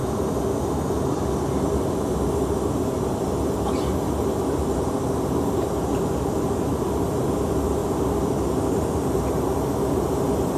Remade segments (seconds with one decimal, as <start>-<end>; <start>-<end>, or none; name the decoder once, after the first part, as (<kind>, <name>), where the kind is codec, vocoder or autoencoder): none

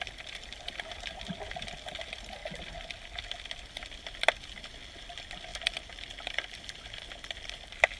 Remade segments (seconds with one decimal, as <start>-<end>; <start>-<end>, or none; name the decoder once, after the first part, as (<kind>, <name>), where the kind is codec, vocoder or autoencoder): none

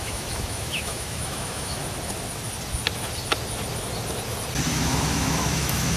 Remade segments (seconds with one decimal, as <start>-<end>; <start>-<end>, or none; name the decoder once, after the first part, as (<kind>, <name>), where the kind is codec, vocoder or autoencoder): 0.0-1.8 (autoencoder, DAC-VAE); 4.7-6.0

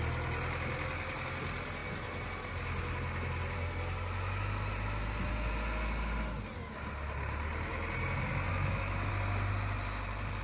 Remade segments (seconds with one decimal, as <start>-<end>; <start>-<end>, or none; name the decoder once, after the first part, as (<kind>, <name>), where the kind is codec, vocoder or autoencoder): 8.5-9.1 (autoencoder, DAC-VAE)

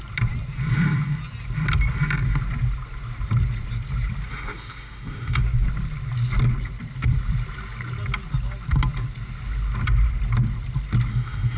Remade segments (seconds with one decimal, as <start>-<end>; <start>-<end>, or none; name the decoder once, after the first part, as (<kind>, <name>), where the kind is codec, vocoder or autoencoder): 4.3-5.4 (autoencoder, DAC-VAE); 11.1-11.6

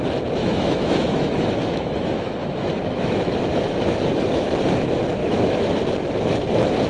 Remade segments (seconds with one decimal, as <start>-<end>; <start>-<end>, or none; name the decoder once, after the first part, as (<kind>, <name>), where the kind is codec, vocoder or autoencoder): 0.4-4.3 (autoencoder, DAC-VAE); 5.2-5.7

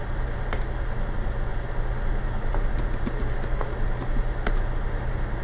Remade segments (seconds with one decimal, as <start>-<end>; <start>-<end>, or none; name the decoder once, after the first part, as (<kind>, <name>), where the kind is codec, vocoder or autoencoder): none

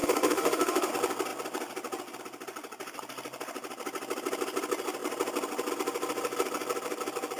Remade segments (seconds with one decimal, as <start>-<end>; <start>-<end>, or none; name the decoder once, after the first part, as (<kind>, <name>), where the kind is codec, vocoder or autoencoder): 0.0-0.9 (autoencoder, DAC-VAE)